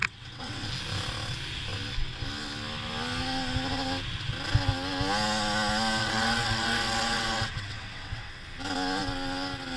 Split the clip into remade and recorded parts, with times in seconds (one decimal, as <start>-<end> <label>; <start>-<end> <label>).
0.0-0.7 remade; 0.7-6.0 recorded; 6.0-8.3 remade; 8.3-9.8 recorded